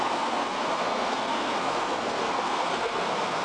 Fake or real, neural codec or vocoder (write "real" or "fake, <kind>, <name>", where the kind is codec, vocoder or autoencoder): fake, codec, SNAC